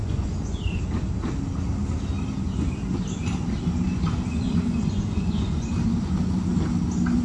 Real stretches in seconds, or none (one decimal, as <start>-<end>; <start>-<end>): 0.8-4.3; 5.7-7.2